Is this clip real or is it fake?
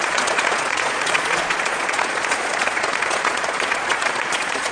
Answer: fake